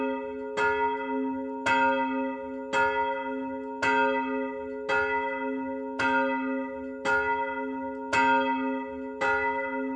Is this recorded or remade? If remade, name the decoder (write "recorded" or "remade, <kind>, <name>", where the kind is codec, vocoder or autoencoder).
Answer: recorded